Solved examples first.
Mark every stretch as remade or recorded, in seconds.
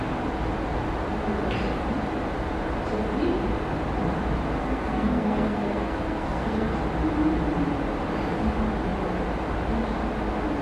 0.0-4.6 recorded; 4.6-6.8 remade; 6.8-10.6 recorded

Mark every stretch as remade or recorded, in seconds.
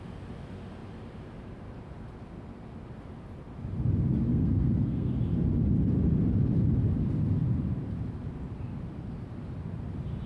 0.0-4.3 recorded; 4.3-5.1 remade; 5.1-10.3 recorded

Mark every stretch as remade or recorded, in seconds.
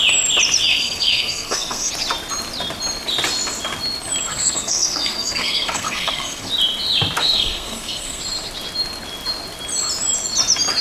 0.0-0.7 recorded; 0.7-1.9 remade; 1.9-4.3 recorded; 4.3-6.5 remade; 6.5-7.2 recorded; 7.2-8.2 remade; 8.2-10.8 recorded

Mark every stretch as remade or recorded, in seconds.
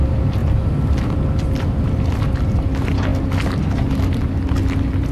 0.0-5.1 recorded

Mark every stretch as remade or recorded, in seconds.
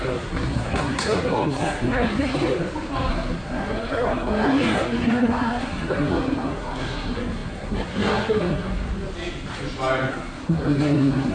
0.0-2.6 remade; 2.6-3.1 recorded; 3.1-8.9 remade; 8.9-10.1 recorded; 10.1-11.3 remade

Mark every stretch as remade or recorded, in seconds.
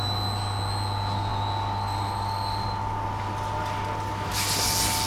0.0-5.1 recorded